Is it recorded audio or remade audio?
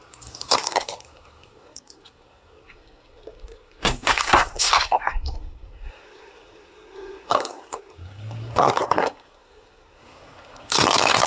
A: remade